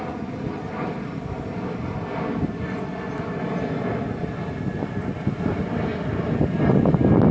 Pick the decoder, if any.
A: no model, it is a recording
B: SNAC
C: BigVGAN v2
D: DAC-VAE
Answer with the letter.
A